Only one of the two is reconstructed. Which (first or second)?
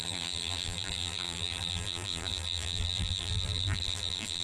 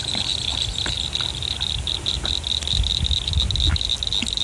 first